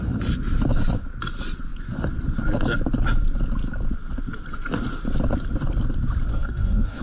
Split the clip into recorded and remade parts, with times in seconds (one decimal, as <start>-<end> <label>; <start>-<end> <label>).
0.0-6.3 recorded; 6.3-7.0 remade